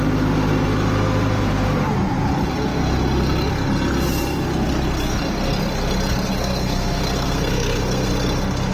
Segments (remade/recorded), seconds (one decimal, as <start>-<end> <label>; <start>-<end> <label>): 0.0-6.4 recorded; 6.4-8.1 remade; 8.1-8.7 recorded